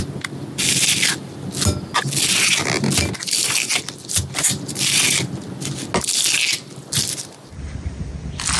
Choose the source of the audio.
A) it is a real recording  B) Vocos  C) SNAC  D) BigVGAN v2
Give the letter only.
A